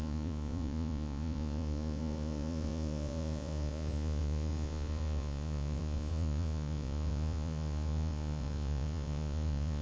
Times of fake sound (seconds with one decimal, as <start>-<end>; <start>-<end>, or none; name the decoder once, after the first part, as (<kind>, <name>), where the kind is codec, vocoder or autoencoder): 0.0-9.8 (vocoder, Vocos)